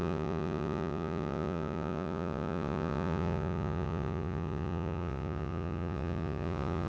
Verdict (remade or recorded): remade